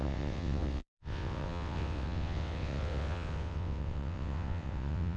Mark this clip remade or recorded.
remade